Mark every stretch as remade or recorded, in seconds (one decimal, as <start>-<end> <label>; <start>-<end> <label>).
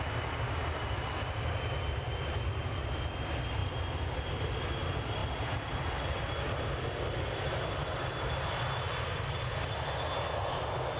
0.0-11.0 recorded